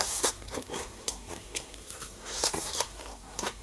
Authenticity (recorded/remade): remade